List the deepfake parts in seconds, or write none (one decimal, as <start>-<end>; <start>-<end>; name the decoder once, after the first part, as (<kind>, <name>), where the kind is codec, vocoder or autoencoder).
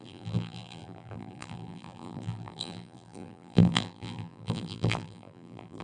0.0-5.8 (vocoder, BigVGAN v2)